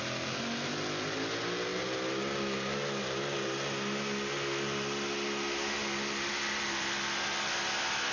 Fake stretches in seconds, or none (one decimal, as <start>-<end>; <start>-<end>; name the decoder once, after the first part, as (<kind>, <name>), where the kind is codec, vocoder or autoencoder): none